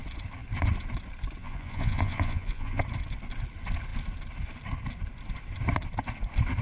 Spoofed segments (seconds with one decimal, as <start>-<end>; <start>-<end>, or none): 1.4-2.8